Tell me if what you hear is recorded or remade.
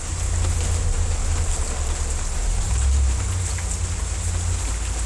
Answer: recorded